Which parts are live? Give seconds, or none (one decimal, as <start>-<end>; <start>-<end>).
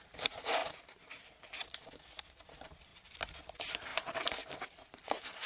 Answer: 0.6-2.5; 2.9-3.5